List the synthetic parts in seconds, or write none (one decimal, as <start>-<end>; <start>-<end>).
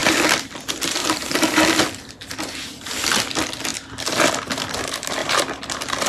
1.0-1.6; 5.2-6.1